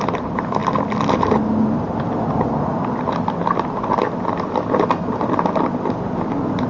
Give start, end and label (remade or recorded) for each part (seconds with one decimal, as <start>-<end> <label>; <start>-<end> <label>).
0.0-6.7 recorded

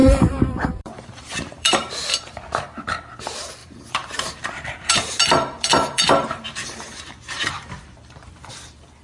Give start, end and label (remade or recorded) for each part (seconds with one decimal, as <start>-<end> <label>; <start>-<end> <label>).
0.0-1.9 remade; 1.9-3.6 recorded; 3.6-8.5 remade; 8.5-9.0 recorded

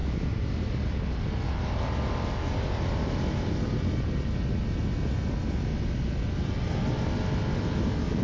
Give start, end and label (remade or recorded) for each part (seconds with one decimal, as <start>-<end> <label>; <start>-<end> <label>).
0.0-4.6 remade; 4.6-5.7 recorded; 5.7-6.7 remade; 6.7-8.2 recorded

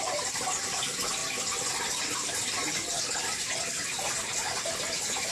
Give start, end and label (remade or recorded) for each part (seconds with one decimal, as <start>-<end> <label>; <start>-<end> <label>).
0.0-1.2 remade; 1.2-2.3 recorded; 2.3-3.8 remade; 3.8-4.6 recorded; 4.6-5.3 remade

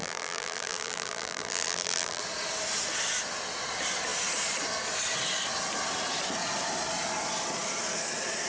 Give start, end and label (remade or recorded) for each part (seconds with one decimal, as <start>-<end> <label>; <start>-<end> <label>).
0.0-2.2 remade; 2.2-8.5 recorded

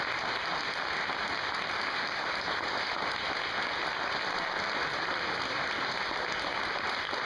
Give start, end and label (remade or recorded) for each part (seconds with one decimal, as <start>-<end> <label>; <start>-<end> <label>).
0.0-7.3 recorded

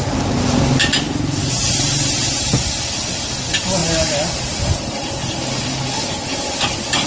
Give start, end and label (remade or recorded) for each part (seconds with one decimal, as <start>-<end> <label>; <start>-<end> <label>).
0.0-1.4 recorded; 1.4-2.8 remade; 2.8-3.8 recorded; 3.8-5.2 remade; 5.2-7.1 recorded

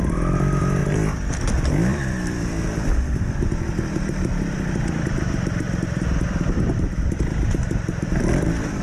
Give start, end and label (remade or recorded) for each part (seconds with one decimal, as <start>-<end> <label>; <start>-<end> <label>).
0.0-8.8 remade